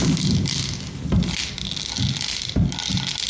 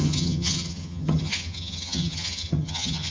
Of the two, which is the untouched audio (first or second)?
first